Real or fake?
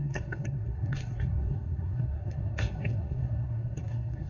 fake